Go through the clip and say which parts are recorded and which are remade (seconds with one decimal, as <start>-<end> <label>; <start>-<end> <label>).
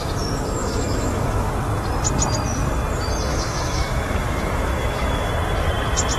0.0-0.6 recorded; 0.6-1.5 remade; 1.5-3.3 recorded; 3.3-5.3 remade; 5.3-6.2 recorded